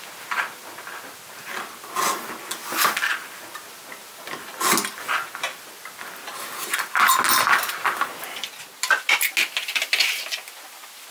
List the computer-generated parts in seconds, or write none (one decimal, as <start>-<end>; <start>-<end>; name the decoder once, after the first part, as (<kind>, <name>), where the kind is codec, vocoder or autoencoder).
none